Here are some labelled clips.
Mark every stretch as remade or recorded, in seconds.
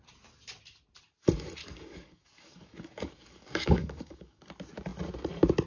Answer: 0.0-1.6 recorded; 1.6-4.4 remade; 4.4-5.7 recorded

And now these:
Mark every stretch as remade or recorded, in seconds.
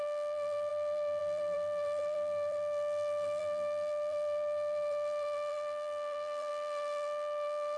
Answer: 0.0-7.8 remade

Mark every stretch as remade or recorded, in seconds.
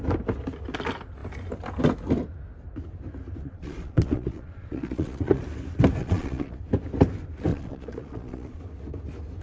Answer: 0.0-3.4 recorded; 3.4-5.4 remade; 5.4-6.0 recorded; 6.0-6.6 remade; 6.6-7.5 recorded; 7.5-8.6 remade; 8.6-9.4 recorded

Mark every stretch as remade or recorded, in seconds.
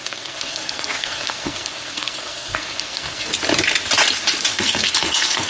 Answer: 0.0-3.3 remade; 3.3-4.5 recorded; 4.5-5.5 remade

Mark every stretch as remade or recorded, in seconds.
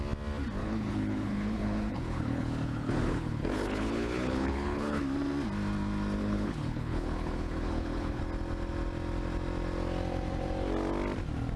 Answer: 0.0-0.6 recorded; 0.6-5.0 remade; 5.0-6.2 recorded; 6.2-8.2 remade; 8.2-11.6 recorded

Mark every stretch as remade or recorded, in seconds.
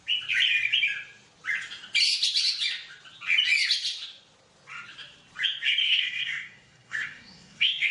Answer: 0.0-5.8 recorded; 5.8-7.9 remade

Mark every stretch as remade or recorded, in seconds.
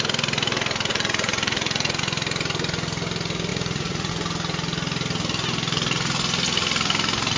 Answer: 0.0-0.9 recorded; 0.9-2.0 remade; 2.0-3.5 recorded; 3.5-4.1 remade; 4.1-7.4 recorded